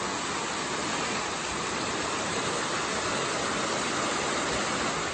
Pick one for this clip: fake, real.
real